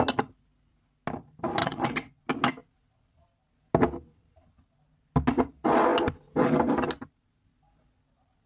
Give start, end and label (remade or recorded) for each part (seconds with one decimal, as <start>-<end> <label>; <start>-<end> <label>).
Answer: 0.0-1.6 recorded; 1.6-2.2 remade; 2.2-8.5 recorded